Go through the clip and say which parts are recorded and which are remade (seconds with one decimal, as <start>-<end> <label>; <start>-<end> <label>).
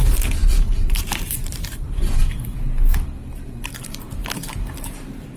0.0-2.5 remade; 2.5-3.8 recorded; 3.8-4.2 remade; 4.2-4.9 recorded; 4.9-5.4 remade